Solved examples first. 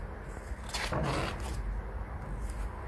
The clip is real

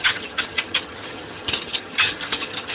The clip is fake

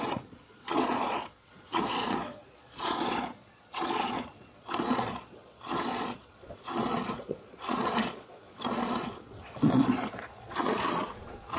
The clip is fake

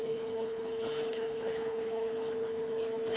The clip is fake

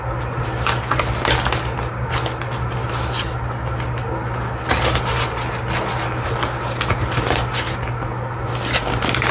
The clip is real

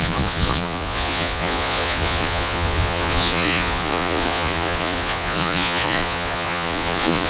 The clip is fake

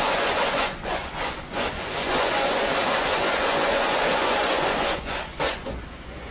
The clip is fake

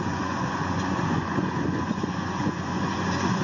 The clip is fake